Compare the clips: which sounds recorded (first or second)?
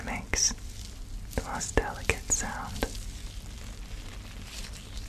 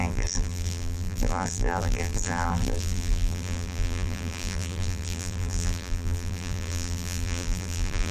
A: first